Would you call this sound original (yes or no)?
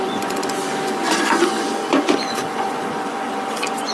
no